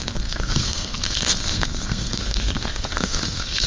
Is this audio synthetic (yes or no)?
yes